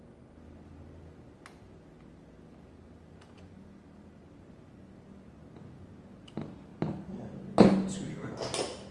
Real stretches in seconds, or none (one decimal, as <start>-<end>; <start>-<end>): 0.0-8.9